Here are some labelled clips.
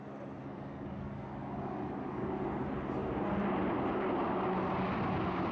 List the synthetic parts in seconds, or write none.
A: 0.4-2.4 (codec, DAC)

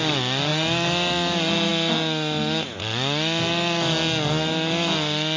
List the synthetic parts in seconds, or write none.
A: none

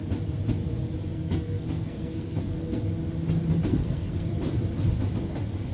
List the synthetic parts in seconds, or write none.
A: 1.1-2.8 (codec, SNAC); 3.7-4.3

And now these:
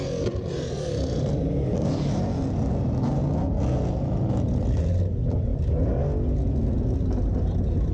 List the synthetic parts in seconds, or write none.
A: none